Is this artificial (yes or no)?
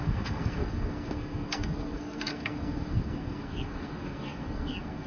yes